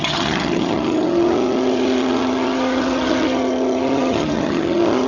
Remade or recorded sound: remade